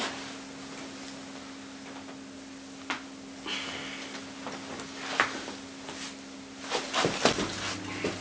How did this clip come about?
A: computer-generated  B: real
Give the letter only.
B